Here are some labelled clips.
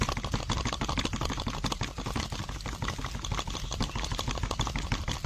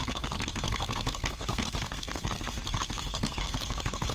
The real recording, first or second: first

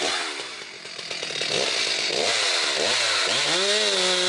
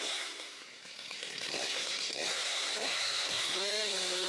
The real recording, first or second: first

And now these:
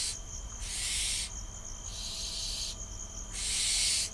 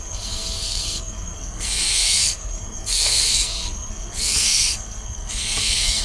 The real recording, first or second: first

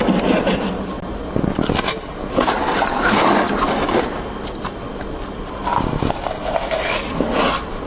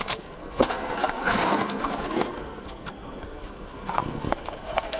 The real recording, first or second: first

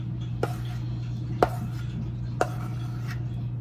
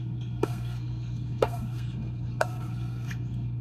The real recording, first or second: first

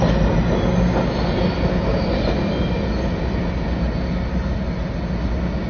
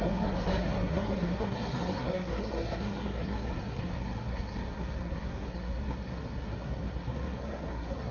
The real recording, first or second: first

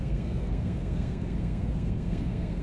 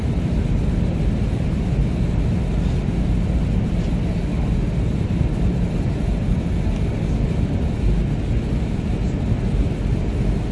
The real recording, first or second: second